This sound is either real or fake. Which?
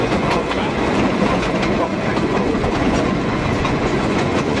fake